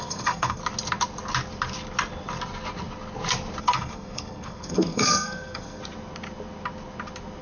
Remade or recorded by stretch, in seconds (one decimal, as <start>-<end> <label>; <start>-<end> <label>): 0.0-0.6 remade; 0.6-3.6 recorded; 3.6-5.8 remade; 5.8-7.4 recorded